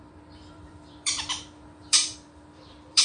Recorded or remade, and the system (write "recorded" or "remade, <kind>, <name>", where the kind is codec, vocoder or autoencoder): remade, vocoder, BigVGAN v2